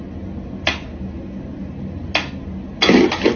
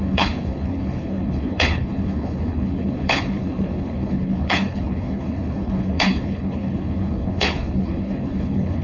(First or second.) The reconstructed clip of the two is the second